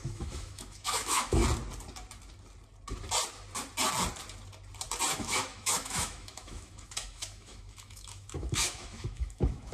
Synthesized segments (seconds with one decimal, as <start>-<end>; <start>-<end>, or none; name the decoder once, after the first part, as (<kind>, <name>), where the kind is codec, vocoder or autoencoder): 0.0-1.4 (autoencoder, DAC-VAE); 5.1-9.7